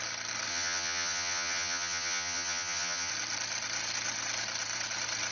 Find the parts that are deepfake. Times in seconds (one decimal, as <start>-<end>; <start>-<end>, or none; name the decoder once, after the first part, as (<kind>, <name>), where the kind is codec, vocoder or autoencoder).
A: 0.5-3.1 (vocoder, HiFi-GAN)